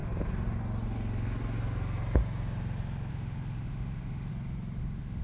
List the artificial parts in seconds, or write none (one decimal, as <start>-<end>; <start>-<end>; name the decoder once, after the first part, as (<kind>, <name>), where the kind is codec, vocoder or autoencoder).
3.1-4.3 (autoencoder, DAC-VAE); 4.8-5.2